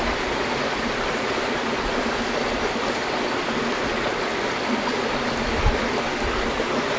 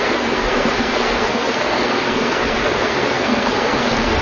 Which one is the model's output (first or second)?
second